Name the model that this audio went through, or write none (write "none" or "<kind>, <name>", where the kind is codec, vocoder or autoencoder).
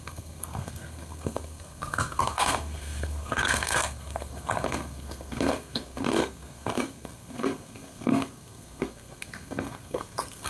codec, SNAC